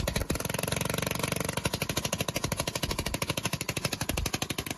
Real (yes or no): yes